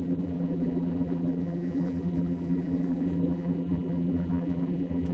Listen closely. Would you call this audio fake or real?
fake